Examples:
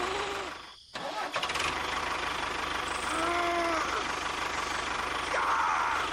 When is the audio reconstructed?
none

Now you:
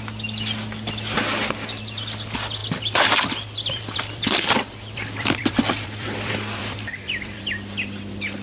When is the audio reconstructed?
2.6-7.4

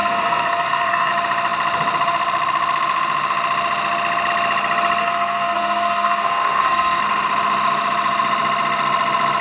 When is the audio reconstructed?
0.0-1.1; 5.0-7.0